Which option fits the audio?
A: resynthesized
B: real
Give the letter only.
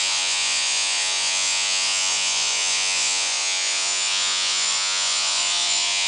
A